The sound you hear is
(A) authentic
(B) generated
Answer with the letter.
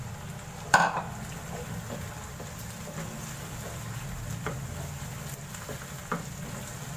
A